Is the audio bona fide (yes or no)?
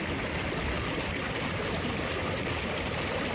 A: yes